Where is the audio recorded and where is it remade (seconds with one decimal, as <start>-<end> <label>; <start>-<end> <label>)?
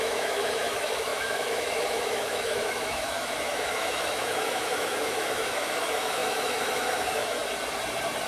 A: 0.0-7.4 remade; 7.4-8.3 recorded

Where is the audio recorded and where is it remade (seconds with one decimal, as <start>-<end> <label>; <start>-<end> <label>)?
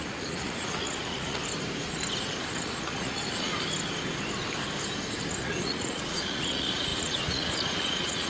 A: 0.0-1.4 remade; 1.4-2.5 recorded; 2.5-3.5 remade; 3.5-5.4 recorded; 5.4-8.3 remade